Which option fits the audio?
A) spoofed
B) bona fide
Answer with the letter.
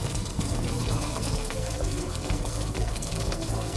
A